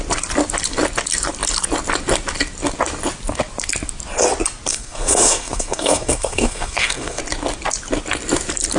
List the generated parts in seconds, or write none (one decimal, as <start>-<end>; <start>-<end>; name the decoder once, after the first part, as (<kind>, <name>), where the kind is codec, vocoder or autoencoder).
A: 4.7-7.2 (codec, SNAC)